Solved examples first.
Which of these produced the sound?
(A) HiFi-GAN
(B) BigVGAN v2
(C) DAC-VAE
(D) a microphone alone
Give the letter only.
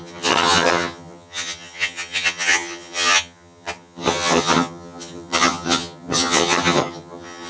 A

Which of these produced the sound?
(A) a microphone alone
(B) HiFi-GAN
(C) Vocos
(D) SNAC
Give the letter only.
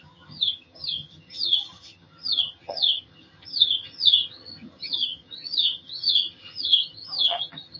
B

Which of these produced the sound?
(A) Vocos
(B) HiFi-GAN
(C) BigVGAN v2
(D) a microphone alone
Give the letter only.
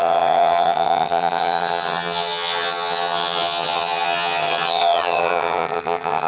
B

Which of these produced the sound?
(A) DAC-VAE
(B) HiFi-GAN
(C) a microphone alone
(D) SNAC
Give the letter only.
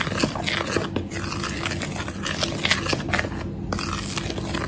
C